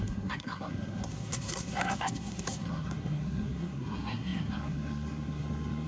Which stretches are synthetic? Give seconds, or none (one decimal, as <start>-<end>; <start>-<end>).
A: 0.0-5.9